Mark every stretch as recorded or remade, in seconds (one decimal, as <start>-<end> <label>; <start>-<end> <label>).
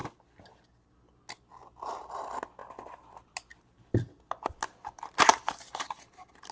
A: 0.0-6.5 recorded